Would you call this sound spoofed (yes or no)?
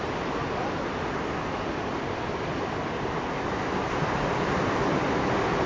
no